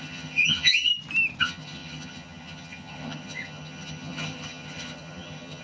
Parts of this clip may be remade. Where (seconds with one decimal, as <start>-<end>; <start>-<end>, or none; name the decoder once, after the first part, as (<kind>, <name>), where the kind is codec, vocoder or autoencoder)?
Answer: 0.0-0.9 (vocoder, HiFi-GAN); 1.4-5.6